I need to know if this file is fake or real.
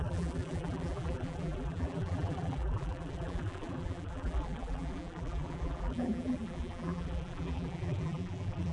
fake